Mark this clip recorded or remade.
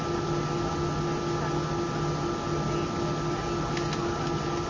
recorded